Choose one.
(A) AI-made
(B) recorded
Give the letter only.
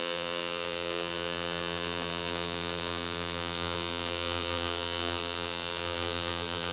A